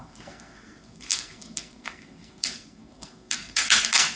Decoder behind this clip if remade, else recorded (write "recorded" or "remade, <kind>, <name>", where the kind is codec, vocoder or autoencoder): remade, codec, SNAC